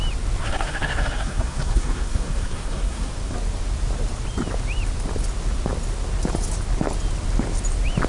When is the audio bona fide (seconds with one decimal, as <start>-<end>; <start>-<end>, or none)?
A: 0.0-0.4; 3.1-8.1